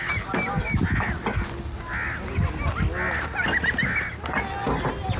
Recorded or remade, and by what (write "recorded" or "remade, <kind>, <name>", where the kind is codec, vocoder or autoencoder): recorded